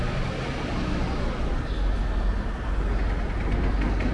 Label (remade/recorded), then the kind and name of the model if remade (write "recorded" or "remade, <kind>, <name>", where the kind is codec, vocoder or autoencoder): recorded